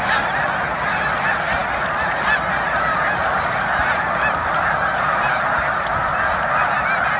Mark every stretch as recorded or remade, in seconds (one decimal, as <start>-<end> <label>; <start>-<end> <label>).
0.0-7.2 recorded